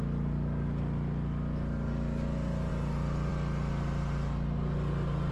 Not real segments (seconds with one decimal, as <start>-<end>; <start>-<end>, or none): none